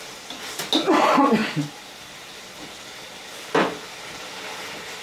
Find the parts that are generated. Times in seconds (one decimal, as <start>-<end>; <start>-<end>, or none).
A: none